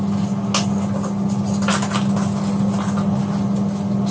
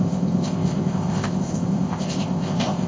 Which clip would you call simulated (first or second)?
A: second